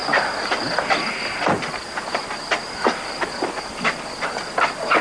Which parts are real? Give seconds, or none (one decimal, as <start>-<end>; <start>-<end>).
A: 0.0-5.0